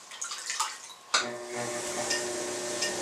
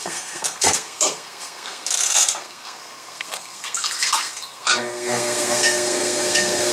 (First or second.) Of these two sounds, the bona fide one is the first